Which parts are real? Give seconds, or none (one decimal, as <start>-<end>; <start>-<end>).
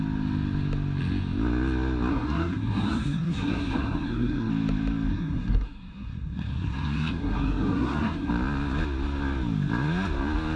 0.0-2.1; 4.5-5.1; 8.3-10.6